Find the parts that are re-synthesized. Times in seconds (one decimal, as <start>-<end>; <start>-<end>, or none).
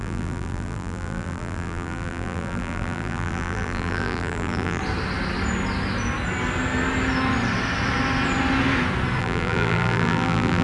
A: 0.0-4.8; 9.2-10.6